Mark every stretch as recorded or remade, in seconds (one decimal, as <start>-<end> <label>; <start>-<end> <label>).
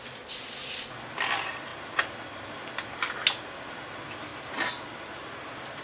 0.0-5.8 recorded